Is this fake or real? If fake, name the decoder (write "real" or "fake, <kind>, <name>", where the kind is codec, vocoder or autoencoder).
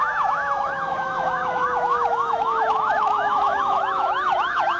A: fake, autoencoder, DAC-VAE